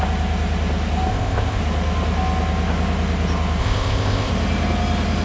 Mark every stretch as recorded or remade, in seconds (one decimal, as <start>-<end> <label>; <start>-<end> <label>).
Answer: 0.0-1.1 recorded; 1.1-1.6 remade; 1.6-3.6 recorded; 3.6-4.3 remade; 4.3-5.2 recorded